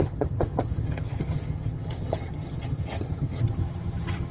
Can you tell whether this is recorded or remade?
remade